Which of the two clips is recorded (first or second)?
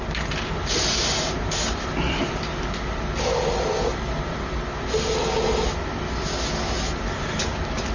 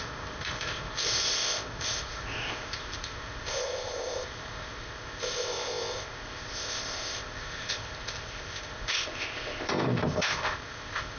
first